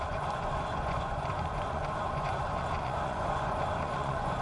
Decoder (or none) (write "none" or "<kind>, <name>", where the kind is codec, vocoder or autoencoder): vocoder, Vocos